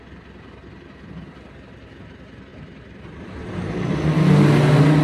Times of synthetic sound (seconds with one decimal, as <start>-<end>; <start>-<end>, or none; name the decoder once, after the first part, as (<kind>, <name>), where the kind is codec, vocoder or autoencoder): 2.5-4.2 (vocoder, BigVGAN v2)